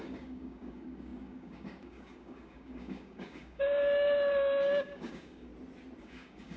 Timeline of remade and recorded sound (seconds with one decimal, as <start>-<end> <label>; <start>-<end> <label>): 0.0-5.5 remade; 5.5-6.0 recorded; 6.0-6.6 remade